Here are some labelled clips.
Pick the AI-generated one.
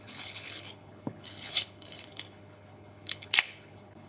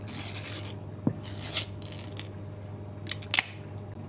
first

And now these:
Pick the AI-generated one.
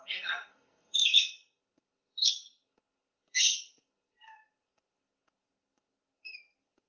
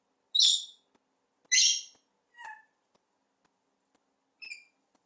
first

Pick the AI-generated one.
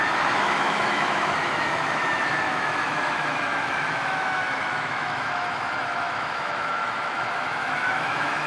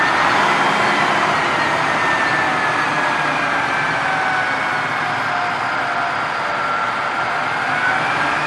first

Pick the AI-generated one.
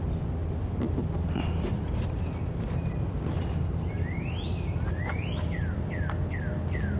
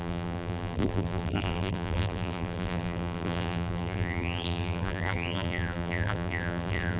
second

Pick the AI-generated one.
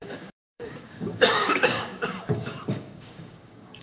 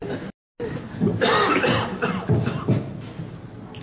first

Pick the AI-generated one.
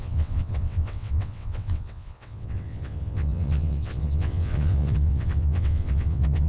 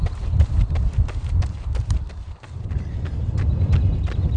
first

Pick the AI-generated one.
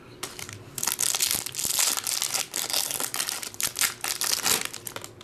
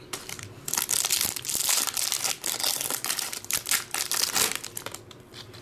second